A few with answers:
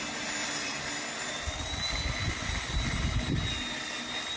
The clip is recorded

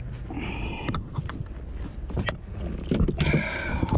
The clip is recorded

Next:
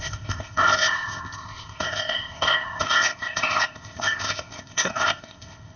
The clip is remade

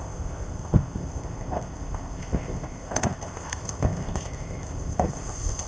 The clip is remade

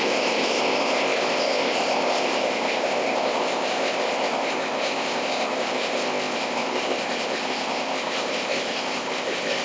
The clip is remade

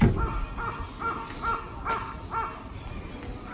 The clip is recorded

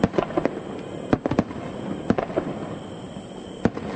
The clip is recorded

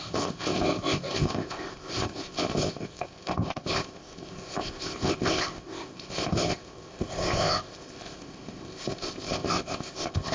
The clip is remade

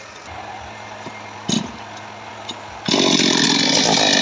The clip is recorded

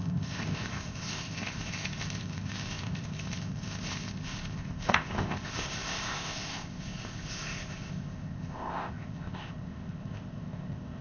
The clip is remade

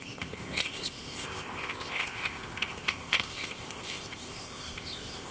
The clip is remade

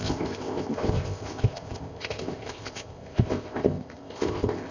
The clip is remade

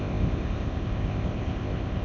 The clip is remade